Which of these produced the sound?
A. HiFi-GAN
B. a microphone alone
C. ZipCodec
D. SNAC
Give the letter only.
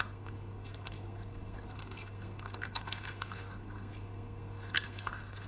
D